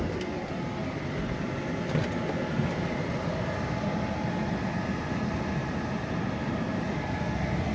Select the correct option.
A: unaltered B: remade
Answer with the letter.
A